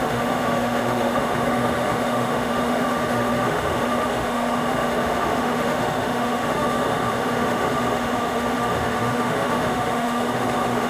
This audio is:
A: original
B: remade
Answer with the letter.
B